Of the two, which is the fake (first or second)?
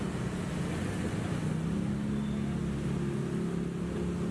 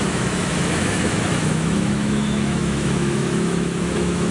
second